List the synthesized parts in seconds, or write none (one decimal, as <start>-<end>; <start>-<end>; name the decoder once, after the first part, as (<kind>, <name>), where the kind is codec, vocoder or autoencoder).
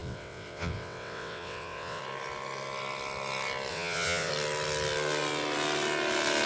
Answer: 0.0-2.0 (vocoder, WaveNeXt); 3.7-4.3